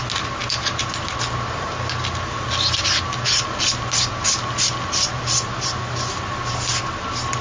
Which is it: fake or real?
real